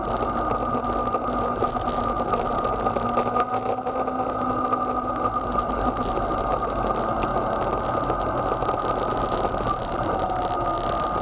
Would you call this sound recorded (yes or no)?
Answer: yes